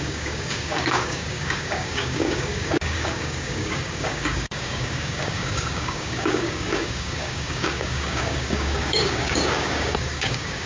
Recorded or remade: remade